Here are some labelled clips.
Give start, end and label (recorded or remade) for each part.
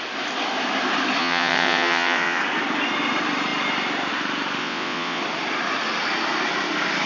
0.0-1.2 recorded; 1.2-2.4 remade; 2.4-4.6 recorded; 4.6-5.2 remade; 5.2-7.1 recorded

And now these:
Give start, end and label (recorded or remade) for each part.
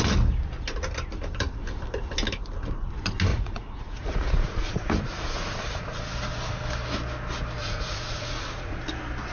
0.0-3.3 recorded; 3.3-6.0 remade; 6.0-7.6 recorded; 7.6-8.8 remade; 8.8-9.3 recorded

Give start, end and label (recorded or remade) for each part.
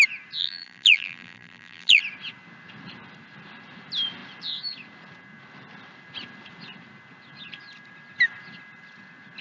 0.0-0.4 recorded; 0.4-2.0 remade; 2.0-9.4 recorded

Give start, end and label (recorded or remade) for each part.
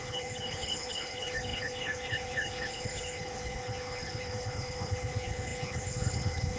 0.0-6.6 remade